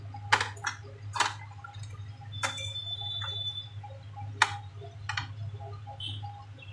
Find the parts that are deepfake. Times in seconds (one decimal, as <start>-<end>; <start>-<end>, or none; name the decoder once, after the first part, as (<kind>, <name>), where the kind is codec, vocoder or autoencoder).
none